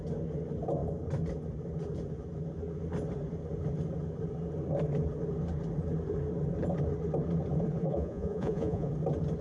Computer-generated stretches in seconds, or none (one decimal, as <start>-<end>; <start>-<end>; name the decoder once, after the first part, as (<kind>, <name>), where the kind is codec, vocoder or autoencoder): 7.8-8.9 (vocoder, Vocos)